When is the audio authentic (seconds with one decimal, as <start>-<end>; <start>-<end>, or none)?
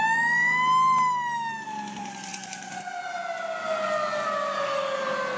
0.0-5.4